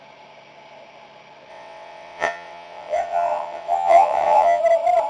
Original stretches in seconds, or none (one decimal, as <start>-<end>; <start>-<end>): 0.0-1.5; 4.6-5.1